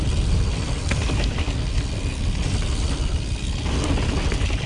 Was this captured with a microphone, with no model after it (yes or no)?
yes